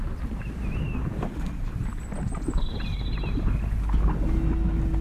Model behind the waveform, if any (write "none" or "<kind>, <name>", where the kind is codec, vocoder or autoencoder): none